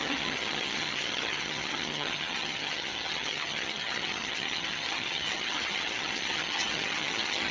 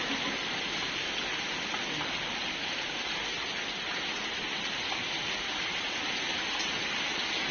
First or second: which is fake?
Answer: first